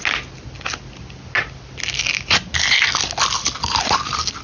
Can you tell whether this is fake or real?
real